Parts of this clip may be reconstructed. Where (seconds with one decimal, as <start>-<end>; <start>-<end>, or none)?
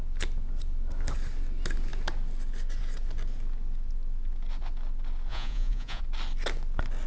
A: 5.3-6.0